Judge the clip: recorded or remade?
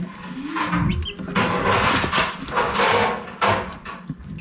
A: recorded